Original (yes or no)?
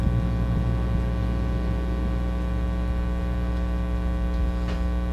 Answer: yes